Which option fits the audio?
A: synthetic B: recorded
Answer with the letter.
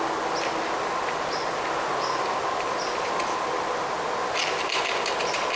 B